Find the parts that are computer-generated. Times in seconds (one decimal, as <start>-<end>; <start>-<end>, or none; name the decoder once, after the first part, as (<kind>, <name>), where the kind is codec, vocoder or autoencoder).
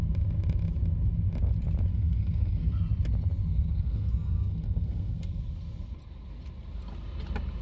1.9-2.7 (codec, SNAC); 3.5-5.4